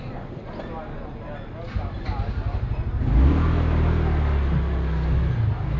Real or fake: real